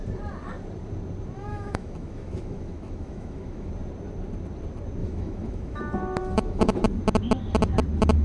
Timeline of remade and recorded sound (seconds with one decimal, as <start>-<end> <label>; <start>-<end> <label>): 0.0-1.5 recorded; 1.5-3.7 remade; 3.7-5.0 recorded; 5.0-5.8 remade; 5.8-6.2 recorded; 6.2-6.8 remade; 6.8-8.2 recorded